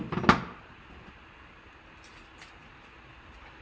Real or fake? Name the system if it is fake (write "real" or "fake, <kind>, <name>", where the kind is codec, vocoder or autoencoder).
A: real